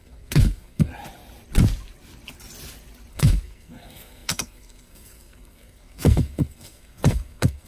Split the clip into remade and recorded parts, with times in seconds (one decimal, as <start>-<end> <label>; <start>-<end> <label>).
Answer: 0.0-0.9 remade; 0.9-3.1 recorded; 3.1-7.7 remade